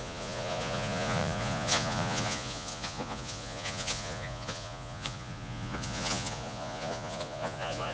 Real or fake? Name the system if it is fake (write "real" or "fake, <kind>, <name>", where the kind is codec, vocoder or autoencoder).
fake, vocoder, Vocos